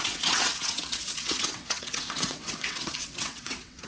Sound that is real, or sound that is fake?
fake